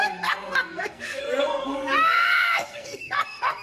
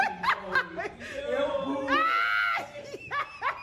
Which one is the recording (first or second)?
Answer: second